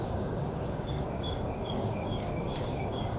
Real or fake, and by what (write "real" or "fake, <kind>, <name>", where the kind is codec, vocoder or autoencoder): fake, codec, DAC